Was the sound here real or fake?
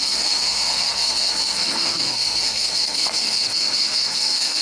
fake